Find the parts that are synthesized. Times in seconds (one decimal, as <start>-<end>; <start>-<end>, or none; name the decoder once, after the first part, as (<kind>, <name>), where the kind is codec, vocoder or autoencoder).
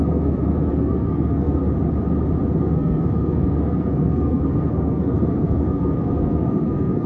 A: 0.0-1.6 (codec, SNAC); 2.6-7.1